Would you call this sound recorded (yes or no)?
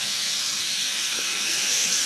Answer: no